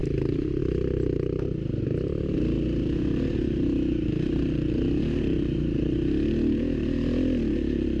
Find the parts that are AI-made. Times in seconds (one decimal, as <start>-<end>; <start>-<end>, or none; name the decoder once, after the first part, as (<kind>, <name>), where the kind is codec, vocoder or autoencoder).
none